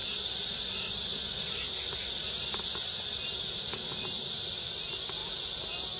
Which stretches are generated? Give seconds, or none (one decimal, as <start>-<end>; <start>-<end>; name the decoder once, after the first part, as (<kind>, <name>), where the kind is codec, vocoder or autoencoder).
none